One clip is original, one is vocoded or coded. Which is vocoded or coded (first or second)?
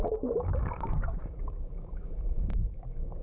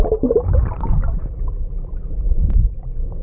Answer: first